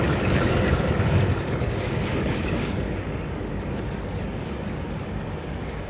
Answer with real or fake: fake